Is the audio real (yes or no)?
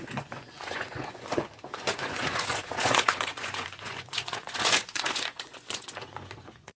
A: no